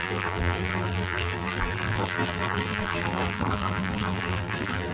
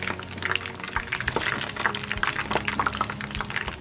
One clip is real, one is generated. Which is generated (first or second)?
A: first